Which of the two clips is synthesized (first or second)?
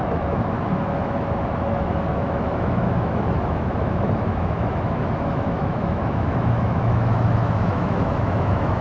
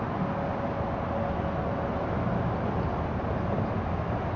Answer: first